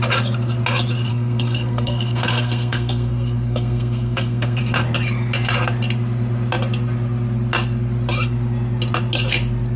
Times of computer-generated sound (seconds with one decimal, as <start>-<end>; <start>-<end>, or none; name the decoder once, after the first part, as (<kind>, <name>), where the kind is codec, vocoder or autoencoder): 1.1-4.6 (codec, SNAC)